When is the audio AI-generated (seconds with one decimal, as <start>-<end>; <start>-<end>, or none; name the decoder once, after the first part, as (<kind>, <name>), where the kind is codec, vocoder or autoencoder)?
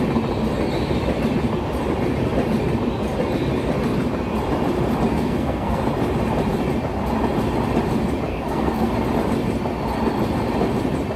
5.1-5.8 (codec, SNAC); 8.3-8.9